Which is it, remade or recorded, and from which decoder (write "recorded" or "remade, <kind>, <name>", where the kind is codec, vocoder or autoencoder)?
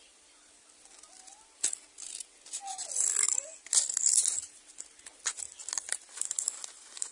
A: recorded